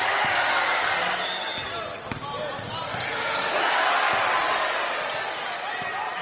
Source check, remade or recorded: recorded